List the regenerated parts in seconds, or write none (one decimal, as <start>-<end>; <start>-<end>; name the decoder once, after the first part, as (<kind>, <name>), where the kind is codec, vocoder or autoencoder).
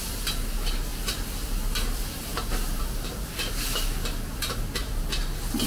none